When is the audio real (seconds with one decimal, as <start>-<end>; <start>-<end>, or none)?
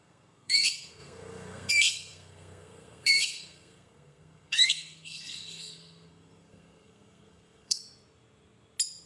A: 7.8-9.1